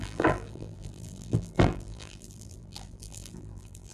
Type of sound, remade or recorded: remade